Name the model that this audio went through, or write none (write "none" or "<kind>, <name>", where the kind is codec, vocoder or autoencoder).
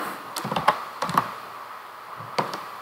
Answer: none